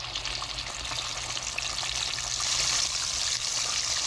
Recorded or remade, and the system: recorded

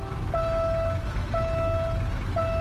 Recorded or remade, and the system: recorded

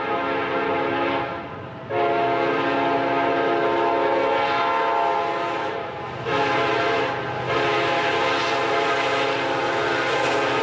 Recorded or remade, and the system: recorded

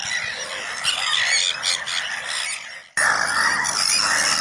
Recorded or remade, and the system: recorded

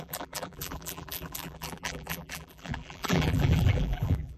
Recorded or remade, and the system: remade, vocoder, BigVGAN v2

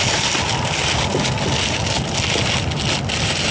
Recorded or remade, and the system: recorded